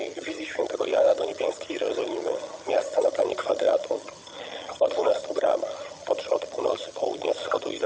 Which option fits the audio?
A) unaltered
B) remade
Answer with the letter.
B